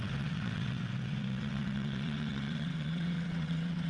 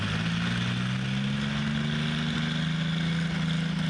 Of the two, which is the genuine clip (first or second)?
second